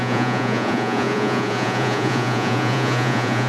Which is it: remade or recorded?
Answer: remade